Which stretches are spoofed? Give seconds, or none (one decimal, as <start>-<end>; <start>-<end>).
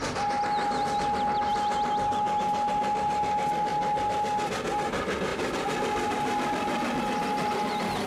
none